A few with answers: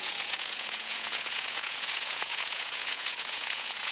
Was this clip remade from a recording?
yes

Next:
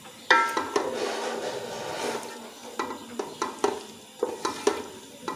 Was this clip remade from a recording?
no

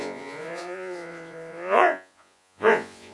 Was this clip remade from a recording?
yes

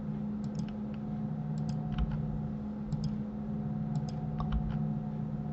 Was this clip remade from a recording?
no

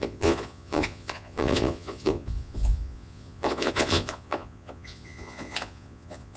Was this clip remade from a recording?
yes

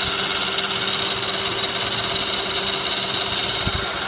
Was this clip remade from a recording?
no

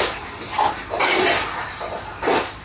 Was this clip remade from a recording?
no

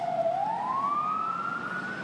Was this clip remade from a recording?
no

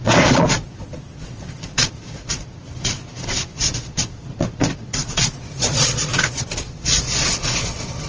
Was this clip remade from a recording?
yes